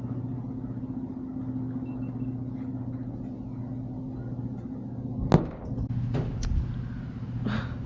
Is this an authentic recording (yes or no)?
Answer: yes